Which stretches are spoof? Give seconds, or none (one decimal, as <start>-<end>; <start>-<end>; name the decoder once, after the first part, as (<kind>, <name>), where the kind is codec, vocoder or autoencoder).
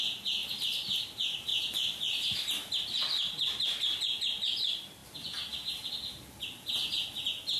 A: 1.5-2.1 (vocoder, BigVGAN v2)